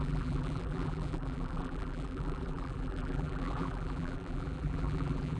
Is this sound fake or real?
fake